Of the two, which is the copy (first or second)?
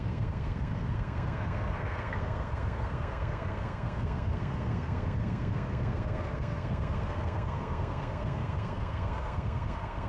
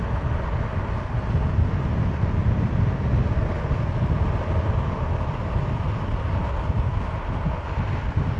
first